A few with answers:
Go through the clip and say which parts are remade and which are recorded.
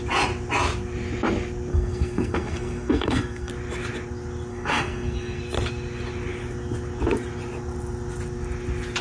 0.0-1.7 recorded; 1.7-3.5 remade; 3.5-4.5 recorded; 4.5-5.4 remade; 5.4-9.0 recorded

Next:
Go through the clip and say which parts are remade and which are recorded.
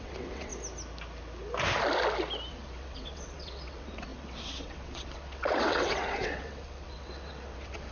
0.0-0.5 remade; 0.5-2.5 recorded; 2.5-7.9 remade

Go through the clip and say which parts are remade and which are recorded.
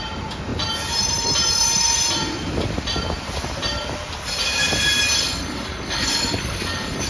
0.0-5.2 recorded; 5.2-7.1 remade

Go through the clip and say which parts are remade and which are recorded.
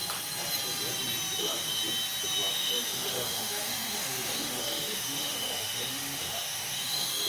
0.0-1.4 recorded; 1.4-1.8 remade; 1.8-2.5 recorded; 2.5-7.3 remade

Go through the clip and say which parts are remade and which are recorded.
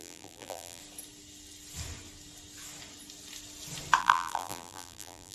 0.0-0.8 remade; 0.8-4.0 recorded; 4.0-5.3 remade